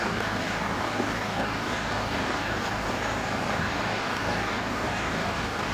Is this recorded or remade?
remade